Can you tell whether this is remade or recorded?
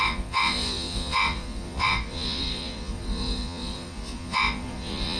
remade